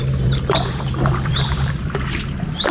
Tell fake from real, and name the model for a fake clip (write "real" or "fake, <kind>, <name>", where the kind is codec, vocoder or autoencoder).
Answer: fake, vocoder, BigVGAN v2